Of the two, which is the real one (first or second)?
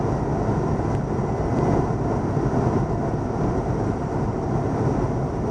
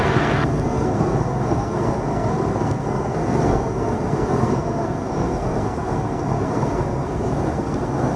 first